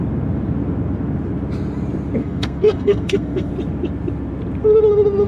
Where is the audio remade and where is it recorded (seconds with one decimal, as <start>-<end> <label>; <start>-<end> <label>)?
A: 0.0-2.2 recorded; 2.2-3.5 remade; 3.5-5.3 recorded